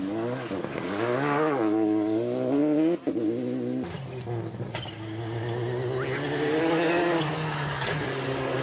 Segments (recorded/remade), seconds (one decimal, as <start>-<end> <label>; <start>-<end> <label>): 0.0-2.6 remade; 2.6-6.6 recorded; 6.6-8.6 remade